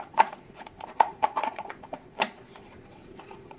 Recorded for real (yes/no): no